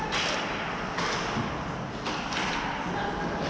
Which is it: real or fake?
real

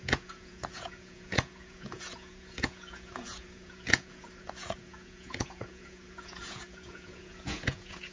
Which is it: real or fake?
fake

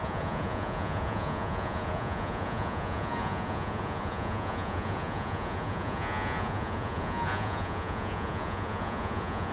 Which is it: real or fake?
fake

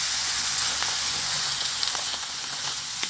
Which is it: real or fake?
fake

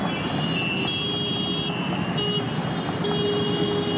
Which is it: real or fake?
real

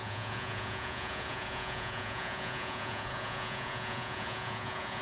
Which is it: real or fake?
fake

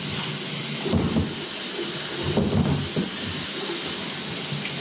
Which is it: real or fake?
real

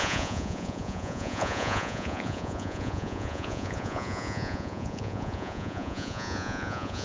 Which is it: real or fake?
fake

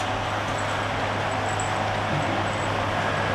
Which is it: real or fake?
real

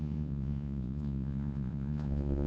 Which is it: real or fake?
fake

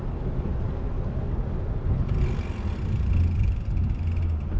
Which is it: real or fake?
real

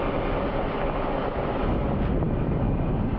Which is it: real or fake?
real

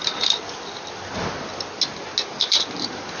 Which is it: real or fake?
real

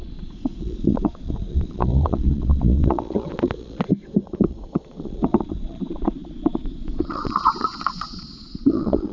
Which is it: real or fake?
fake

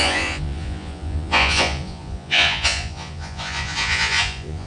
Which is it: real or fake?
fake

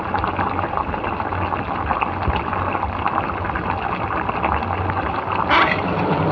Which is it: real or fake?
real